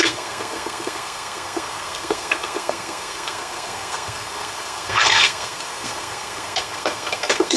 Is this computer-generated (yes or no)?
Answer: yes